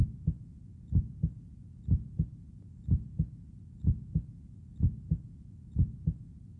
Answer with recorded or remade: recorded